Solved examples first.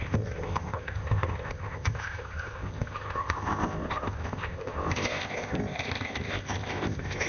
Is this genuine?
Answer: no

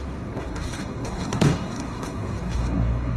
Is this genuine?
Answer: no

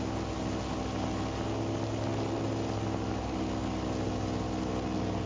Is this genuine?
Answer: yes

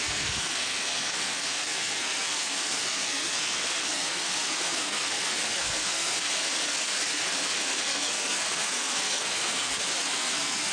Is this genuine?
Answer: no